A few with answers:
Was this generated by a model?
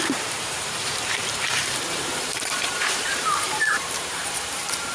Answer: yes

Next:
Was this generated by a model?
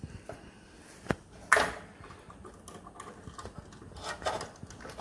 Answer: no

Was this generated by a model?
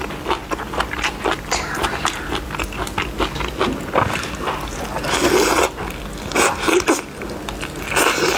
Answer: no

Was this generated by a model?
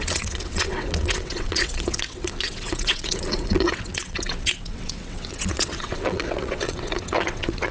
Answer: yes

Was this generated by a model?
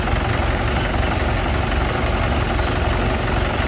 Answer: no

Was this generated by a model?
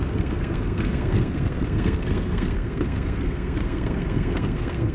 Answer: yes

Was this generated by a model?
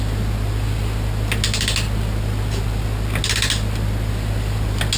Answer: no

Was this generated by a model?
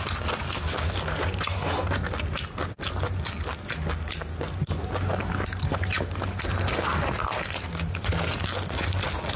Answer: no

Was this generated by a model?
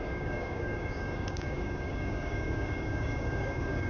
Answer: yes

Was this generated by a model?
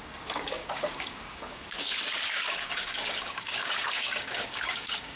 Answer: yes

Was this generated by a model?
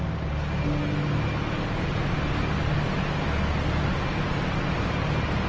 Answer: no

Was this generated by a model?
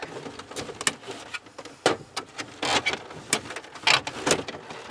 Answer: no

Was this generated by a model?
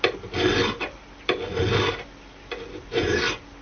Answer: no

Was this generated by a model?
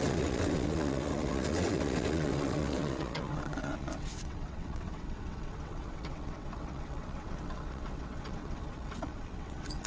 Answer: yes